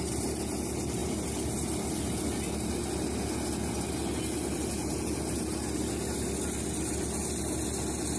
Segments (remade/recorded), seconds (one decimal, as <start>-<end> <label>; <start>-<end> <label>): 0.0-8.2 recorded